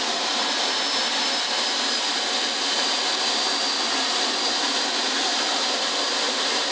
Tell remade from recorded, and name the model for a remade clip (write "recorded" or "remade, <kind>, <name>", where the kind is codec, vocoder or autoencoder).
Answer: recorded